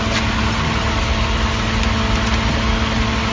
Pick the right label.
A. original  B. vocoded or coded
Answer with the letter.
A